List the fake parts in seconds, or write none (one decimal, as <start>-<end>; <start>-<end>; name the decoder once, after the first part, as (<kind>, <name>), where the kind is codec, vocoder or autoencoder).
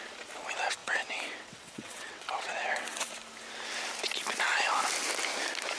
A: 0.8-3.1 (vocoder, WaveNeXt)